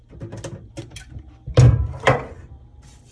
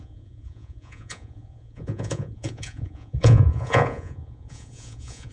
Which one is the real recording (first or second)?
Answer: first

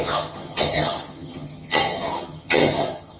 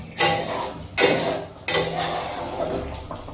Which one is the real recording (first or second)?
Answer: second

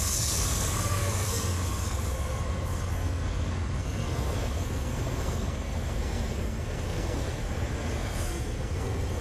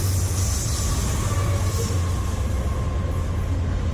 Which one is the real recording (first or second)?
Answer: second